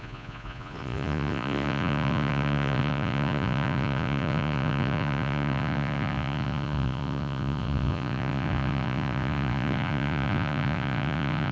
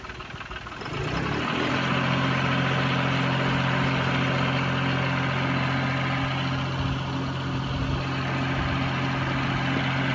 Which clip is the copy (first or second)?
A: first